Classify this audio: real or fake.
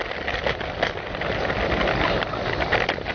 real